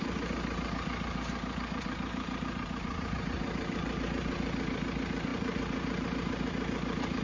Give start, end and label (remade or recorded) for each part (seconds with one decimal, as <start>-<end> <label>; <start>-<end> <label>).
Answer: 0.0-7.2 remade